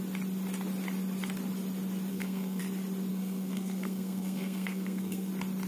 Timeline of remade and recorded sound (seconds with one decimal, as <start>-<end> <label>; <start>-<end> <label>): 0.0-2.1 recorded; 2.1-2.6 remade; 2.6-3.1 recorded; 3.1-5.3 remade; 5.3-5.7 recorded

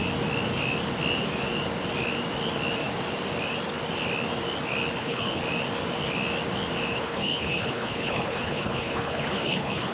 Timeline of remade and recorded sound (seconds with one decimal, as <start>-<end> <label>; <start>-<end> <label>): 0.0-5.0 recorded; 5.0-5.4 remade; 5.4-7.0 recorded; 7.0-9.9 remade

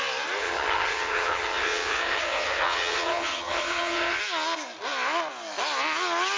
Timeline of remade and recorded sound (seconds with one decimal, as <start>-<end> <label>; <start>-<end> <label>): 0.0-0.4 recorded; 0.4-4.2 remade; 4.2-6.4 recorded

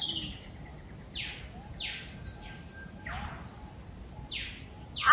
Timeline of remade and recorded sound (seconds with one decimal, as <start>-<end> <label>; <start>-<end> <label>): 0.0-5.1 recorded

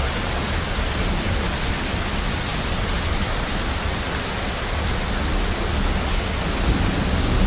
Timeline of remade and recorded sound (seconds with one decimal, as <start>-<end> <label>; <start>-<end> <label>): 0.0-2.5 recorded; 2.5-3.5 remade; 3.5-7.5 recorded